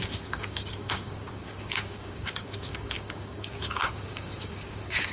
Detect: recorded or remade remade